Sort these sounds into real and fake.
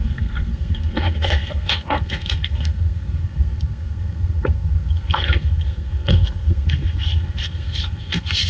fake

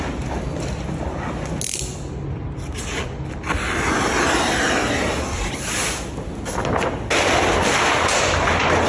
real